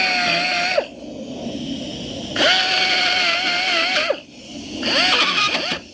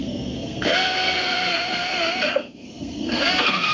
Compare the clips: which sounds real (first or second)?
first